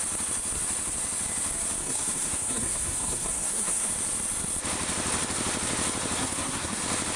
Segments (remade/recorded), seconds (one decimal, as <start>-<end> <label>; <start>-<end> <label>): 0.0-1.8 recorded; 1.8-3.9 remade; 3.9-6.2 recorded; 6.2-6.8 remade; 6.8-7.2 recorded